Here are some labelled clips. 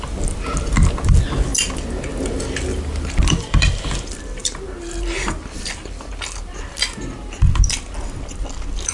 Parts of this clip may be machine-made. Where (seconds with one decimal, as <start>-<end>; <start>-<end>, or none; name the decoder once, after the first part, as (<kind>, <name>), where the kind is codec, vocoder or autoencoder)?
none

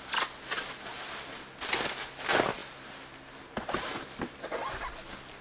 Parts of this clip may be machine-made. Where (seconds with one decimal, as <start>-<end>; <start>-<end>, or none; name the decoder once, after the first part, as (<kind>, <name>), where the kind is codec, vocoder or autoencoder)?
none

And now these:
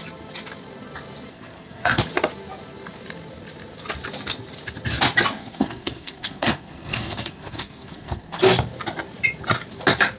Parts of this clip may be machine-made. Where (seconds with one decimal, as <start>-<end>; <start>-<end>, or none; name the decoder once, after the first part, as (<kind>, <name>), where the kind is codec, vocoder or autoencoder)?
1.3-2.0 (codec, SNAC); 5.4-8.4

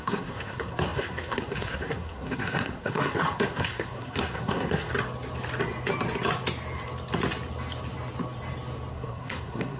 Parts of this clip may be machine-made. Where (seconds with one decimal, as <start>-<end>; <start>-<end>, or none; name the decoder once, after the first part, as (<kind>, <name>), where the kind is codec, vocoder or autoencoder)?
0.0-4.9 (codec, SNAC); 8.9-9.8